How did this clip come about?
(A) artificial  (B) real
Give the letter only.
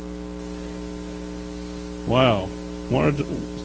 B